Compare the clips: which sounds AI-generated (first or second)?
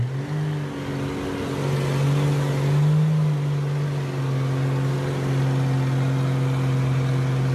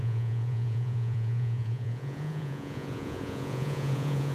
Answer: second